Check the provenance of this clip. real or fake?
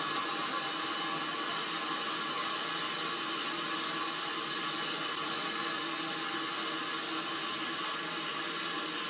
real